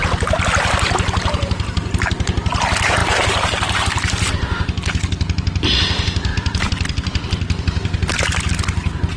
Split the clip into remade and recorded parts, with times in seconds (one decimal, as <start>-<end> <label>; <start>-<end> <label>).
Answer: 0.0-6.3 recorded; 6.3-8.5 remade; 8.5-9.2 recorded